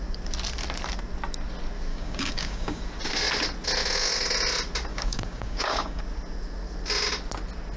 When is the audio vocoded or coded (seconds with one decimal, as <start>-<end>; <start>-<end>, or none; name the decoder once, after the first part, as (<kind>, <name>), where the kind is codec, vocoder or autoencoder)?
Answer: 1.9-2.8 (codec, DAC); 4.9-6.0